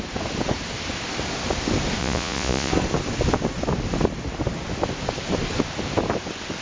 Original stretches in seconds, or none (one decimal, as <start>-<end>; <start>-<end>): 0.0-2.0; 2.7-6.6